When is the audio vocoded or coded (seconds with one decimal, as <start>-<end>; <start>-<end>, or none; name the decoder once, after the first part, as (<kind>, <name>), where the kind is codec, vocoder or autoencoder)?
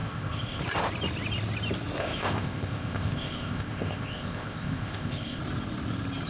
0.0-0.6 (codec, ZipCodec); 2.0-5.4